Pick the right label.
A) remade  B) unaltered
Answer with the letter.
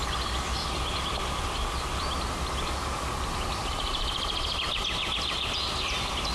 B